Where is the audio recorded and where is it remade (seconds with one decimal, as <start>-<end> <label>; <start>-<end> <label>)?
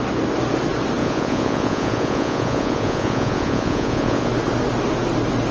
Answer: 0.0-1.0 recorded; 1.0-4.3 remade; 4.3-5.5 recorded